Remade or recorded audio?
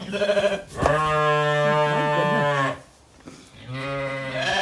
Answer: recorded